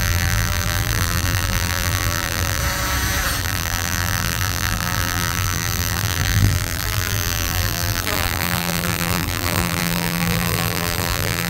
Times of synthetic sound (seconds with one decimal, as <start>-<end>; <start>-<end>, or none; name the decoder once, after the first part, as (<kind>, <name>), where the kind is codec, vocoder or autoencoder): 0.0-2.6 (vocoder, BigVGAN v2); 3.4-11.5